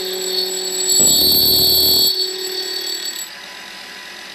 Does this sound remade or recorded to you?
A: recorded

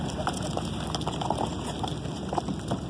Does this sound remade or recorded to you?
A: recorded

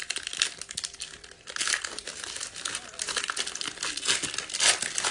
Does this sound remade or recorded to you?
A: recorded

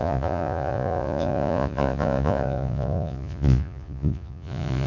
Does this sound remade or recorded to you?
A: remade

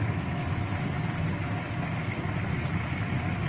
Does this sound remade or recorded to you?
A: recorded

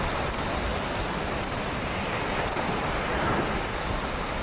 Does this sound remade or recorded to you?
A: recorded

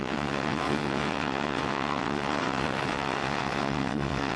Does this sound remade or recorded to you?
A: remade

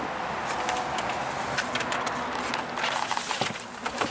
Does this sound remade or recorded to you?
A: recorded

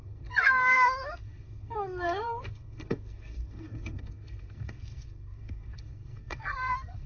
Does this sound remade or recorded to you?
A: remade